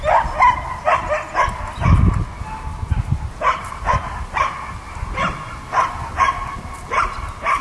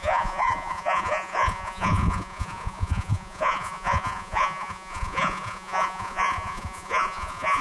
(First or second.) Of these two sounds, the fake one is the second